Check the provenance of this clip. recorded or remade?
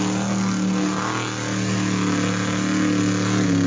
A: recorded